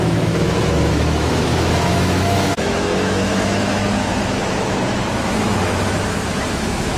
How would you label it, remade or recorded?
remade